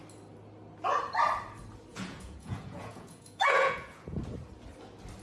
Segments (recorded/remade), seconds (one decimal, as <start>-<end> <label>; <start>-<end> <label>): 0.0-1.9 recorded; 1.9-4.2 remade; 4.2-5.2 recorded